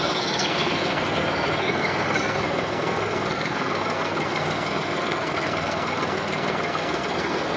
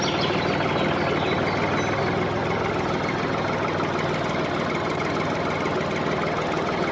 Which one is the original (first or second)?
second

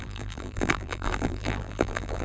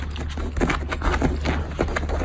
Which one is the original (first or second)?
second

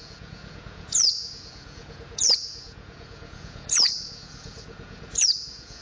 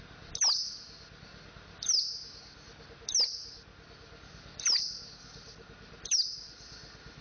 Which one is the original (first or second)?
second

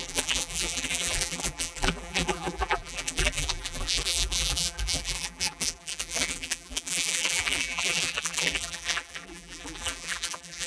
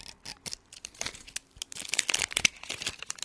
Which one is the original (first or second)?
second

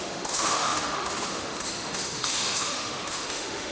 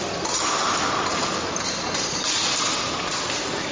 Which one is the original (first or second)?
second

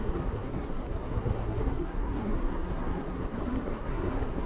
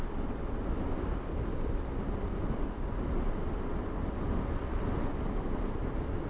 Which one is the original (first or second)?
second